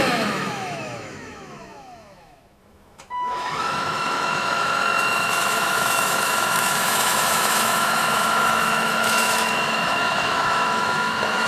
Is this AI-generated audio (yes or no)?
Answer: yes